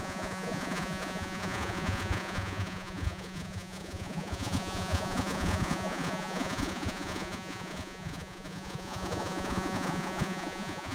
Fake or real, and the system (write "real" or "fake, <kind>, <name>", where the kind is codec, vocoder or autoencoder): fake, vocoder, Vocos